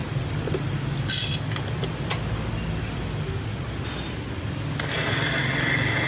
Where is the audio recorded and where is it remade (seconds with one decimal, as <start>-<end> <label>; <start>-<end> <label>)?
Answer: 0.0-6.1 recorded